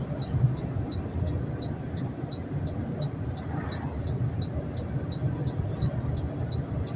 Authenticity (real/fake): real